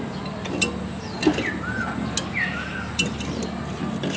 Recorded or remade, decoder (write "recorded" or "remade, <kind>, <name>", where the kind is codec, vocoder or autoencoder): recorded